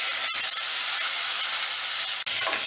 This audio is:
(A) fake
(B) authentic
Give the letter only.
B